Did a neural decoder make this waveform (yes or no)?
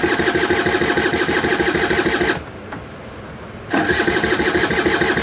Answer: no